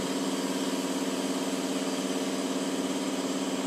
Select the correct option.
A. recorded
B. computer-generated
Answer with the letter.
A